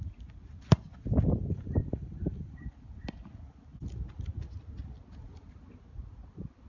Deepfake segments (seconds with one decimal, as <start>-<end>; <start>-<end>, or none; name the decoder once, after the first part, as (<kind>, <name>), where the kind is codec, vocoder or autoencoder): 1.4-2.7 (vocoder, BigVGAN v2)